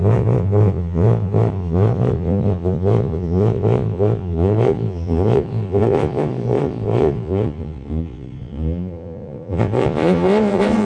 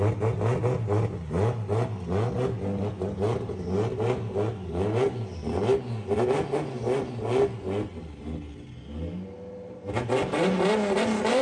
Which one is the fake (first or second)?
first